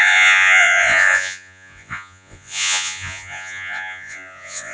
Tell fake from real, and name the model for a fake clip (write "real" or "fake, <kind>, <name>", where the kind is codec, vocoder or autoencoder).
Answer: fake, vocoder, Vocos